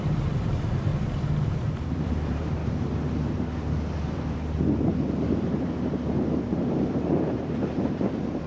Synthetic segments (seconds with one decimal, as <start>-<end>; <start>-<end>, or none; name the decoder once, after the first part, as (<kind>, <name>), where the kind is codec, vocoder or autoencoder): 0.0-0.9 (vocoder, BigVGAN v2); 1.5-2.6; 6.4-8.5